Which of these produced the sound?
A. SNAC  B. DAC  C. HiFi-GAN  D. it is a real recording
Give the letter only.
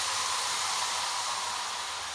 D